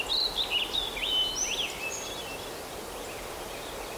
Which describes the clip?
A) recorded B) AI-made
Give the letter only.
A